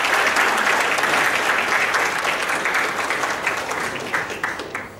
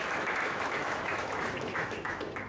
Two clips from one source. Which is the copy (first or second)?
second